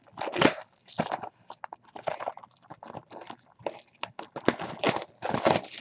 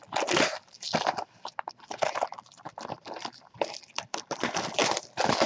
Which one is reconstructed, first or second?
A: second